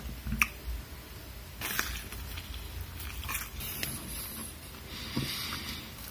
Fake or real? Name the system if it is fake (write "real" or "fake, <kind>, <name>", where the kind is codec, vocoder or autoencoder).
real